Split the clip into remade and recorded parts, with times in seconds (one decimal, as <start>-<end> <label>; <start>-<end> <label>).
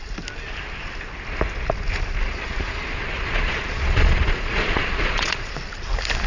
0.0-2.2 recorded; 2.2-5.6 remade; 5.6-6.3 recorded